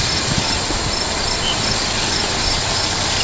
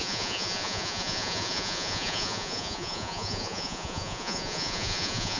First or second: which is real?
first